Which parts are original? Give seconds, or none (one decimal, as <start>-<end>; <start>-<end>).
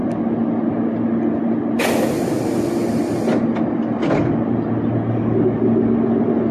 0.0-6.5